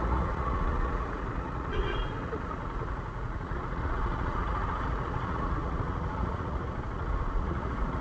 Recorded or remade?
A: remade